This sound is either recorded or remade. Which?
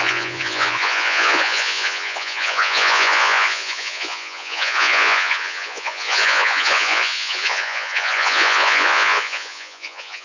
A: remade